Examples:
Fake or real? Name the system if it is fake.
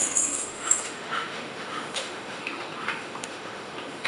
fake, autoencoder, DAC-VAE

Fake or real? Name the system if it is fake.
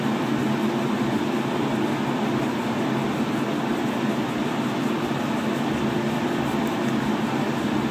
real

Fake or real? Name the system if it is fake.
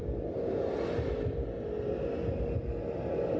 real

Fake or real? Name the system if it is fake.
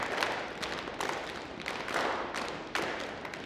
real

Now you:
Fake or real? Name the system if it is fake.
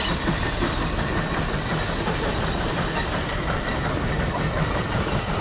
real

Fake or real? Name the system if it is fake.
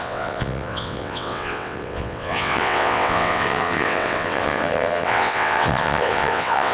fake, vocoder, WaveNeXt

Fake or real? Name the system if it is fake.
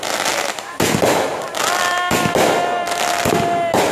real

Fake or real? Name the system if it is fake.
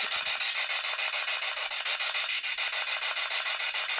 real